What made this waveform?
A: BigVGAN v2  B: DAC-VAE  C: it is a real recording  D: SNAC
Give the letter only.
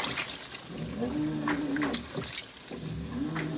C